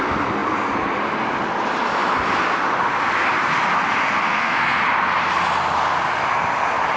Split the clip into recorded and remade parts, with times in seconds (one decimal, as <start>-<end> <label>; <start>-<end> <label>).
0.0-4.2 recorded; 4.2-4.8 remade; 4.8-7.0 recorded